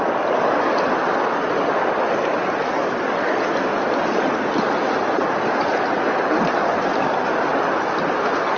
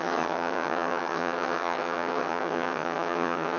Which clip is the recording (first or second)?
first